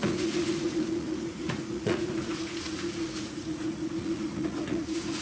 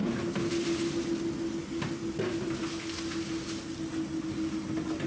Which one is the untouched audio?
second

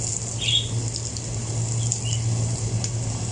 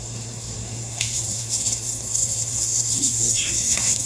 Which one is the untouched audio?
first